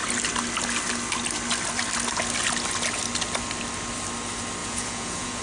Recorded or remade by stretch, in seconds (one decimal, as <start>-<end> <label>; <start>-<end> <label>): 0.0-4.6 recorded; 4.6-5.4 remade